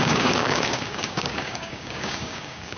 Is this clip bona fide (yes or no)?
no